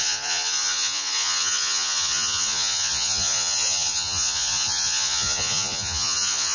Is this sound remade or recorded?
remade